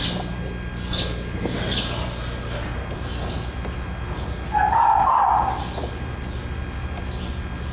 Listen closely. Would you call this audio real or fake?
real